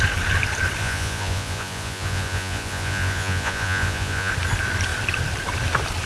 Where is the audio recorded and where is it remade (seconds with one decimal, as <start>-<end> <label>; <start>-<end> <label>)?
0.0-0.8 recorded; 0.8-4.3 remade; 4.3-6.1 recorded